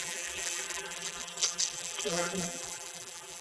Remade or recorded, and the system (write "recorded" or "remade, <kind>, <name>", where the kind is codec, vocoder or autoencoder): remade, vocoder, BigVGAN v2